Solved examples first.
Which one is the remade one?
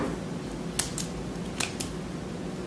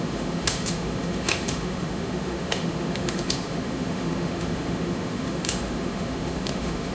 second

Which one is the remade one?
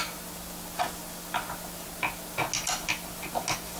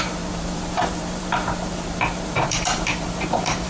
second